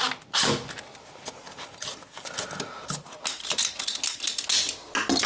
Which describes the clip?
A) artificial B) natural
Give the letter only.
B